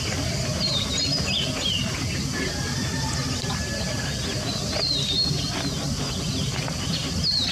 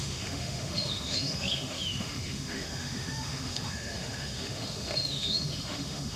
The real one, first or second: first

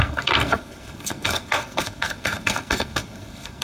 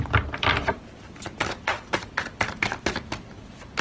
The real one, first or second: second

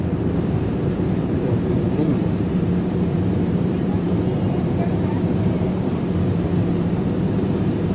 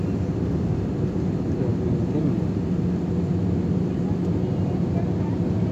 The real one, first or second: second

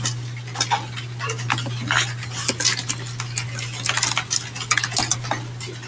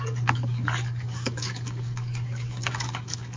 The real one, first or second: first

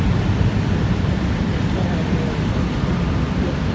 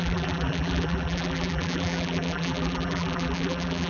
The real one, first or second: first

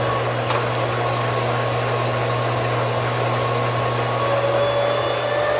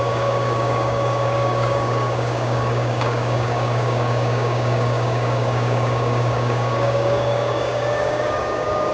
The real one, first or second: first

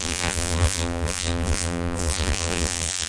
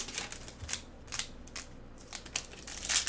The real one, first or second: second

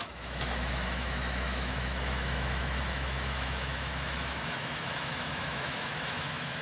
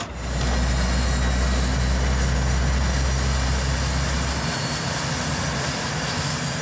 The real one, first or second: second